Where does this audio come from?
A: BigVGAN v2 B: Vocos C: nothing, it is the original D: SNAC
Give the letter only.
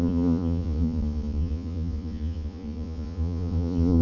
B